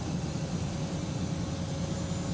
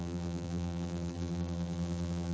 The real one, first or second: first